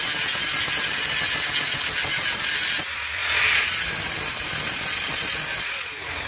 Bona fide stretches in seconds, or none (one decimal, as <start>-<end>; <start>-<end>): 0.0-6.3